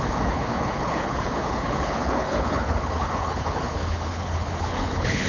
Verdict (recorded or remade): remade